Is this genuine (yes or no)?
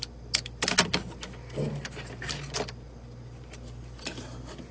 yes